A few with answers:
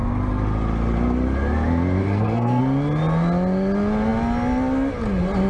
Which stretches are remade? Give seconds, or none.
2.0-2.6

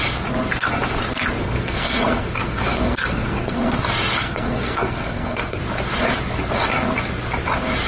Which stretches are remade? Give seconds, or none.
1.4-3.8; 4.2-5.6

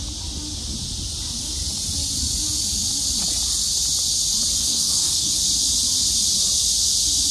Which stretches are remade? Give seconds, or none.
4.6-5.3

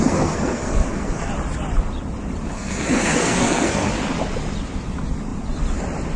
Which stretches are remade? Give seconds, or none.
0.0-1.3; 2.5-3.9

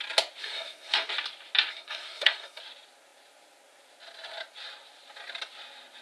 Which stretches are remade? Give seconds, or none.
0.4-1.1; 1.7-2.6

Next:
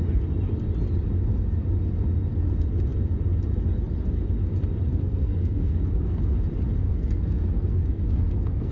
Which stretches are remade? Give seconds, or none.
4.9-6.2; 6.8-8.7